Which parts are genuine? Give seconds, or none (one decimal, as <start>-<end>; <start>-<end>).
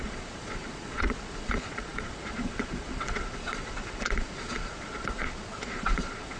none